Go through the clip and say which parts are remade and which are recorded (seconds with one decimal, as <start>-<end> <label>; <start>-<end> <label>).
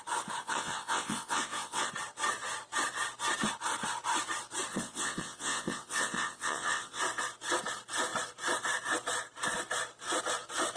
0.0-0.4 recorded; 0.4-1.9 remade; 1.9-4.7 recorded; 4.7-7.0 remade; 7.0-10.8 recorded